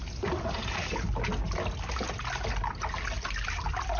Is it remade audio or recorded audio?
recorded